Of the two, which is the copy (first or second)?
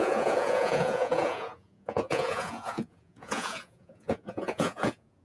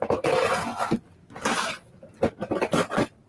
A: first